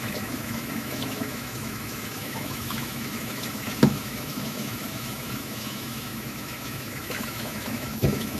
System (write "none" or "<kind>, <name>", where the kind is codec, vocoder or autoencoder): autoencoder, DAC-VAE